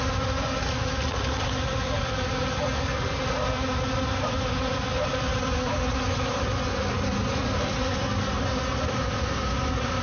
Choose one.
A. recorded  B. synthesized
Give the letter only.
A